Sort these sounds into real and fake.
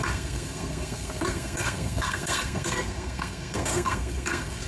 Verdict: fake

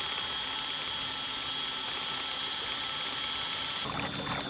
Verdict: real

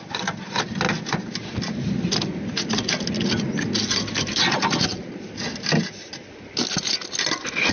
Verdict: real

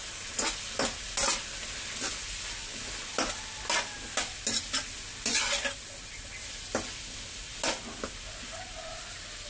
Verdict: real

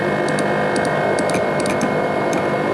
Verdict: real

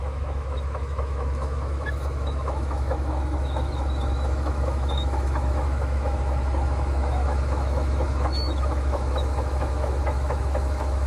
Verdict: fake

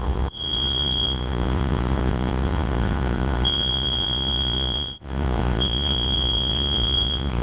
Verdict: fake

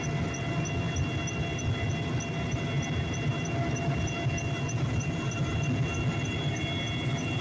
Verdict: real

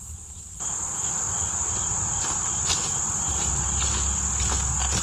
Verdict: real